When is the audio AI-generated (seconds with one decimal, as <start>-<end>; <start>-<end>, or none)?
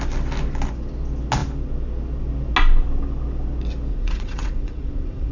3.9-5.3